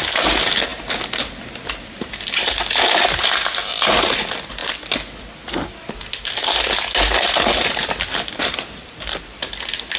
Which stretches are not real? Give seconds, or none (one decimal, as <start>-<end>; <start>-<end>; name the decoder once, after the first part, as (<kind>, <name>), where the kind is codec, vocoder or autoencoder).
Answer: none